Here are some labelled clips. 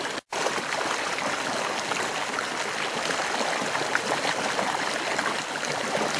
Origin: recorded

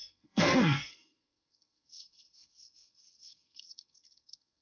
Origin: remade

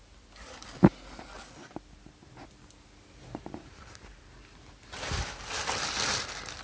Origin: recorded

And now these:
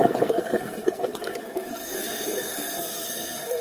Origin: remade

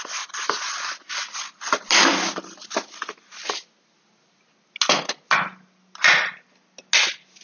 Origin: recorded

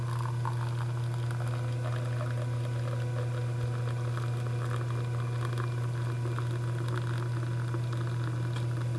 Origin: recorded